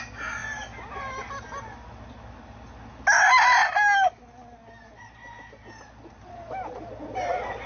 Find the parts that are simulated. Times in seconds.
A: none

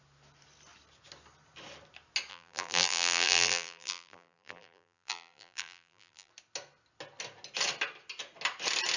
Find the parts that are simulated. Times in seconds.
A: 2.3-6.3